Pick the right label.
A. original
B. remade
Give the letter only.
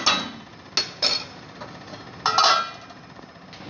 A